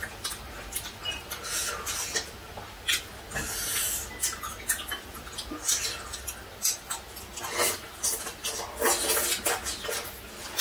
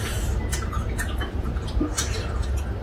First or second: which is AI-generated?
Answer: second